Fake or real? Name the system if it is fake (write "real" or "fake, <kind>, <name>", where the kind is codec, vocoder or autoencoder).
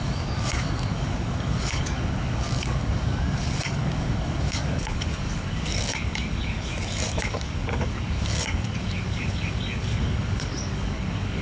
fake, codec, DAC